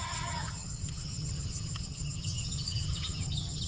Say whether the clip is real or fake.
fake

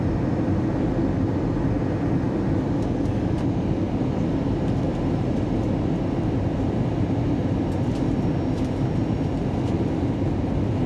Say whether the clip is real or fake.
real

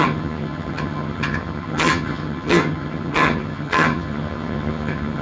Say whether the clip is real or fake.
fake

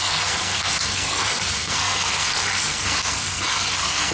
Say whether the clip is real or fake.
fake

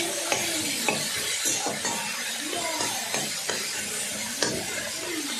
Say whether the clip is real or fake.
real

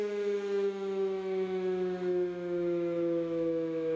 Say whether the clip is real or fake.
fake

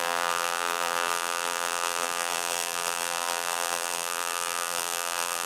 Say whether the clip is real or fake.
fake